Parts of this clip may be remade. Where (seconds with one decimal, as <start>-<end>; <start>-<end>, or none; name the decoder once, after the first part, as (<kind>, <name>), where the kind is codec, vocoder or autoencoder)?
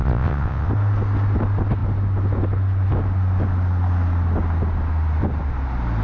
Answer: 0.0-0.7 (vocoder, WaveNeXt)